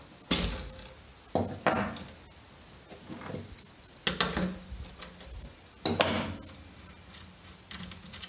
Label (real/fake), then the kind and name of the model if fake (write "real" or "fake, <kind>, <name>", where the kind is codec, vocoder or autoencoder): real